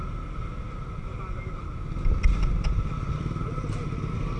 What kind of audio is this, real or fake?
real